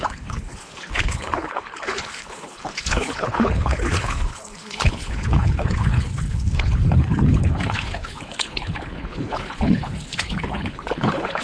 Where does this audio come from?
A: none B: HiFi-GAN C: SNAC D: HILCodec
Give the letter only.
D